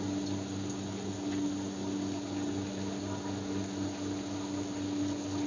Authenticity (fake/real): real